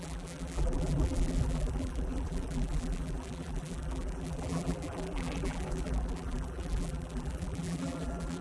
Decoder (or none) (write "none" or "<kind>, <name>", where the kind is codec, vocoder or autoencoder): vocoder, BigVGAN v2